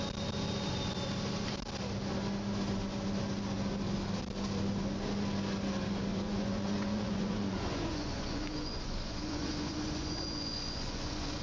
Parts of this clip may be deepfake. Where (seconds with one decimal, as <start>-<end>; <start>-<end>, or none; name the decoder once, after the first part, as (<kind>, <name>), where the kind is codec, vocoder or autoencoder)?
6.1-11.4 (vocoder, Vocos)